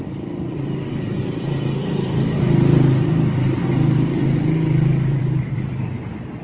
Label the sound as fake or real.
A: fake